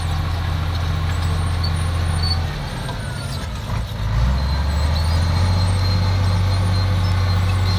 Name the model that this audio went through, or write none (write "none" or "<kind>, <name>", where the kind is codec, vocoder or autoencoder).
none